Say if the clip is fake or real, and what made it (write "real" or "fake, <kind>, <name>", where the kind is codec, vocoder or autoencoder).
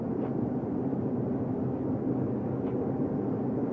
real